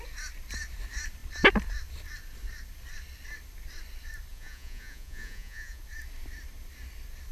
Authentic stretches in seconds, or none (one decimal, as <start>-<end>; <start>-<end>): 0.0-4.3; 5.8-7.3

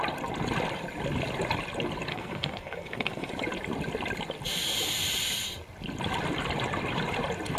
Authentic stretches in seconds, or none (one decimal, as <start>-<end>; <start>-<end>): 0.0-2.1; 3.3-7.6

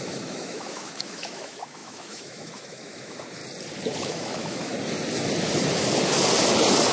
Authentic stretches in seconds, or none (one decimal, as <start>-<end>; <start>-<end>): 3.4-4.0; 4.7-6.9

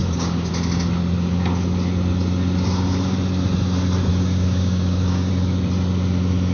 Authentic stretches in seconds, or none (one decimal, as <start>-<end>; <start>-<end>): 0.5-4.1; 5.3-6.5

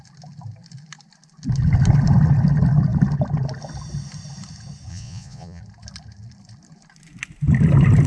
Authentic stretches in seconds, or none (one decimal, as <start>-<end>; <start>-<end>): 0.0-4.9; 5.6-8.1

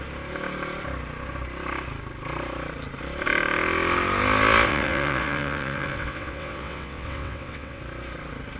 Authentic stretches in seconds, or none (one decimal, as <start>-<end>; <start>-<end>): 0.0-4.7; 7.8-8.6

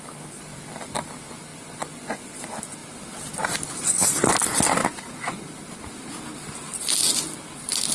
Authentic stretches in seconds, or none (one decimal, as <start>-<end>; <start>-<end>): 0.0-1.5; 2.4-7.9

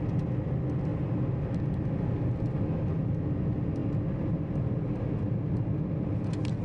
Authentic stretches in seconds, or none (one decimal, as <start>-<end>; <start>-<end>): 0.0-6.6